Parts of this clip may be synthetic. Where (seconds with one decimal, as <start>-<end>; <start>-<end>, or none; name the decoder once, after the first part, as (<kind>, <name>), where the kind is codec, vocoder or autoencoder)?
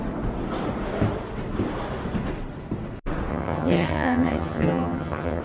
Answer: 3.3-5.4 (vocoder, HiFi-GAN)